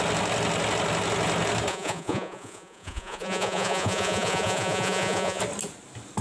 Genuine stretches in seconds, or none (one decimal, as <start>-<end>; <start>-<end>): 0.0-1.7; 5.4-6.2